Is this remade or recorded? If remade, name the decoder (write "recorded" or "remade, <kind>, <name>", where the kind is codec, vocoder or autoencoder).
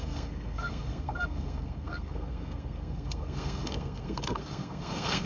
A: remade, codec, SNAC